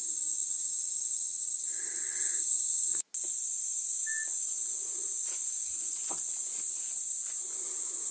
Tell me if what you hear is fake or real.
fake